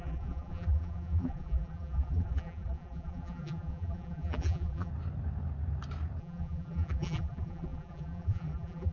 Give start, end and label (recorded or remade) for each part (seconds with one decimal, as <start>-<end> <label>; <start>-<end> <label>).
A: 0.0-4.9 remade; 4.9-6.2 recorded; 6.2-8.9 remade